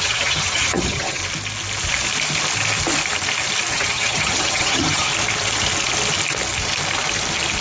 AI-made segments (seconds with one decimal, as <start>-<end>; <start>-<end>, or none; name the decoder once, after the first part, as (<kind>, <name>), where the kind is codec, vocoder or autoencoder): 0.0-1.2 (vocoder, HiFi-GAN); 3.7-5.1